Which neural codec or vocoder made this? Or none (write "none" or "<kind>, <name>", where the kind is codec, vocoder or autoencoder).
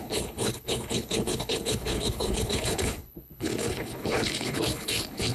codec, HILCodec